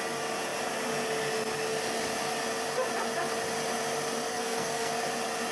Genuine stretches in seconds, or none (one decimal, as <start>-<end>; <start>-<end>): 0.0-4.3; 4.9-5.5